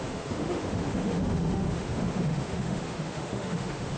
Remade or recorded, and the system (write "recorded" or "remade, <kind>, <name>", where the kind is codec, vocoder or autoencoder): remade, autoencoder, DAC-VAE